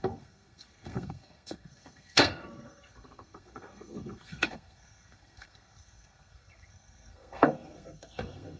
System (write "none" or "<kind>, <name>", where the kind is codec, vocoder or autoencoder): codec, SNAC